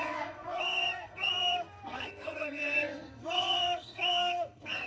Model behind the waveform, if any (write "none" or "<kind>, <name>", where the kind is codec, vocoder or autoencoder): codec, SNAC